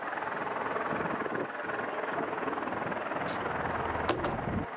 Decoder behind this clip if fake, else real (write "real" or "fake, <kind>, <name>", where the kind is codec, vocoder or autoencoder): real